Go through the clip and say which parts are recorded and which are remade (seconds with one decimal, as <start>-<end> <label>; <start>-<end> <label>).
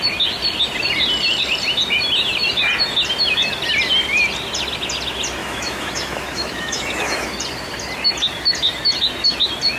0.0-5.4 recorded; 5.4-7.3 remade; 7.3-9.8 recorded